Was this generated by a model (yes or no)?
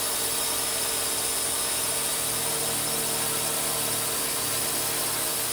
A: no